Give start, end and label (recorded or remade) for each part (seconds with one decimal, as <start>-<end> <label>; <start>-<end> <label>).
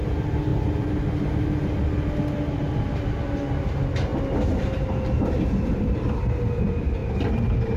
0.0-7.8 recorded